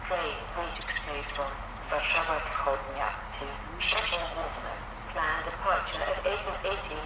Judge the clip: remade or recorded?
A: recorded